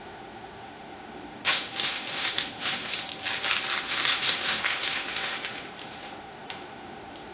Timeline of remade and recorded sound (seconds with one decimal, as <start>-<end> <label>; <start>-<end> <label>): 0.0-3.1 remade; 3.1-3.8 recorded; 3.8-7.3 remade